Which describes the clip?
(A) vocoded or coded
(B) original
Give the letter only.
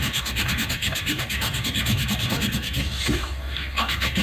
A